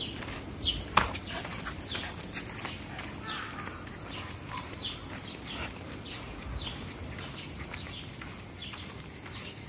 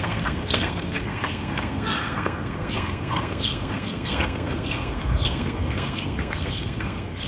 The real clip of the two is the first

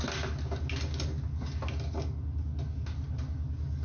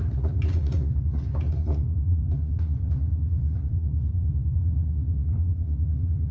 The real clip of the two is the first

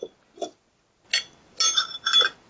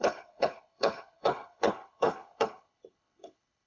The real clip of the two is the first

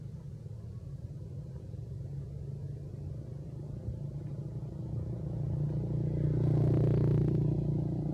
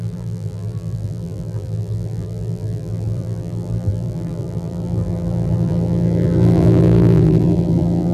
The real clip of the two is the first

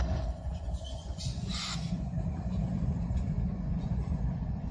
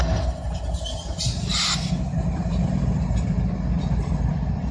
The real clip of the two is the second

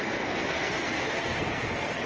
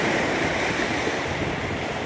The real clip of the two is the second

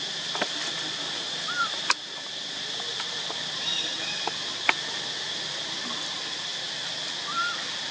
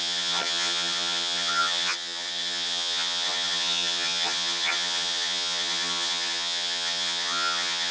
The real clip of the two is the first